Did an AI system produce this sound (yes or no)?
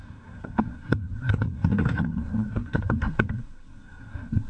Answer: yes